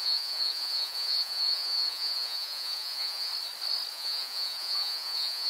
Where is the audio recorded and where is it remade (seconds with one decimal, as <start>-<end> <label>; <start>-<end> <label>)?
0.0-3.3 remade; 3.3-3.9 recorded; 3.9-5.5 remade